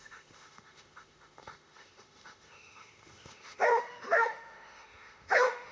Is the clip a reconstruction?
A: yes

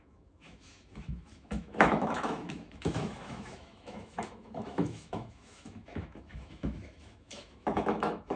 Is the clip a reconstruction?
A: yes